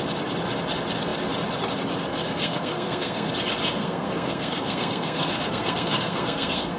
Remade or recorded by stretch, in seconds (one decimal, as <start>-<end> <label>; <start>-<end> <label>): 0.0-2.1 recorded; 2.1-3.3 remade; 3.3-3.8 recorded; 3.8-6.8 remade